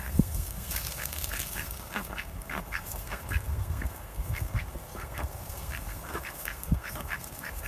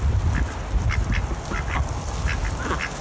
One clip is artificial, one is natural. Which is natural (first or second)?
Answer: second